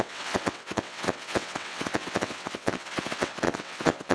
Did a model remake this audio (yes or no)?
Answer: yes